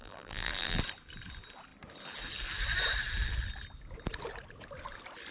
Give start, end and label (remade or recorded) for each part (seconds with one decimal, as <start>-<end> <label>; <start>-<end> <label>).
0.0-0.8 remade; 0.8-5.3 recorded